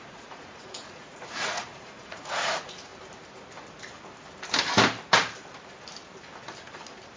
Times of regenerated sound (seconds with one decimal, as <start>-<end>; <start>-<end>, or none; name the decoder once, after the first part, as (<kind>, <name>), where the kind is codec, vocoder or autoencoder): 0.0-2.9 (vocoder, Vocos)